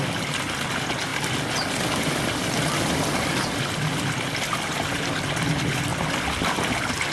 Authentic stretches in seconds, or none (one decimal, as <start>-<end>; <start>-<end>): 0.0-7.1